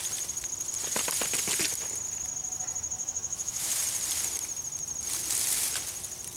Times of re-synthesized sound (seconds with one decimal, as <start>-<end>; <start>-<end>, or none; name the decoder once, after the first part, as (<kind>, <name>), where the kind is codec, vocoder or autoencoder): 3.0-3.7 (autoencoder, DAC-VAE)